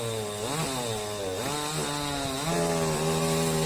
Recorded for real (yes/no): yes